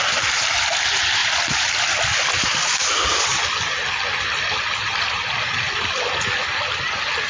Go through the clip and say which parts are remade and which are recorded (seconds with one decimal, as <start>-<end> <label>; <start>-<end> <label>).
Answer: 0.0-7.3 recorded